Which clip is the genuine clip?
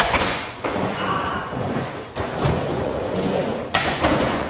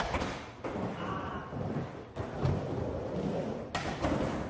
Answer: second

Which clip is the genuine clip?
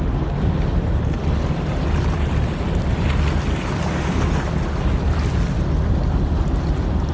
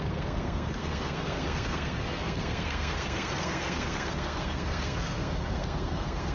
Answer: first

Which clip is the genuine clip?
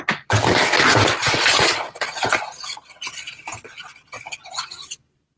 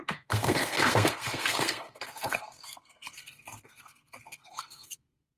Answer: first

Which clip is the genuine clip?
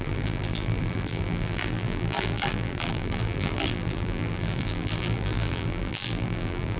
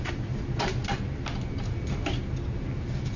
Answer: second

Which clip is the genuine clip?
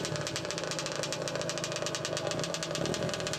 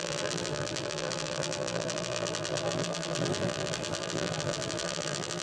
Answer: first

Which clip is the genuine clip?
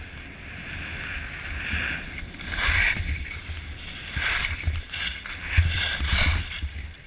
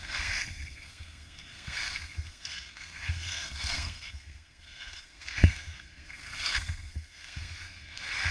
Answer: first